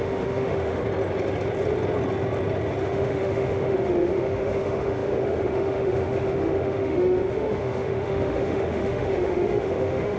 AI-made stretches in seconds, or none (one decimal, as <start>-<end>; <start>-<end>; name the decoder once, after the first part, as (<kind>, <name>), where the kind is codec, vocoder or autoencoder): 0.0-0.8 (autoencoder, DAC-VAE); 2.8-10.2